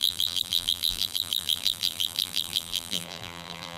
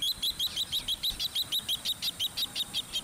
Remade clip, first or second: first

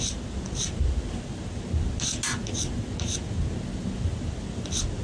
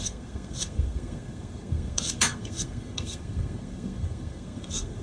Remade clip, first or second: second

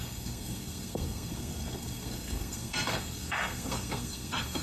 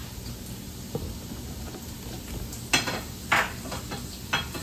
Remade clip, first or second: first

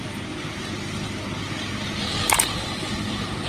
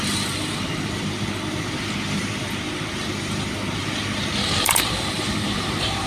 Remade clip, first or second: second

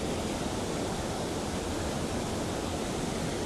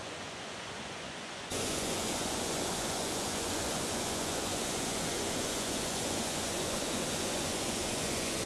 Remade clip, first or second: second